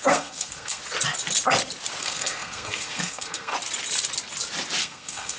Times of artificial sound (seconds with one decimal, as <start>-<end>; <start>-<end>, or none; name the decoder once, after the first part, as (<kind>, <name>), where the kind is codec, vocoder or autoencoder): 0.0-0.8 (codec, SNAC); 2.0-3.5; 4.8-5.4